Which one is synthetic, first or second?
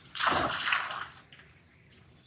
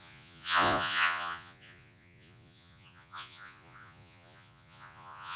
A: second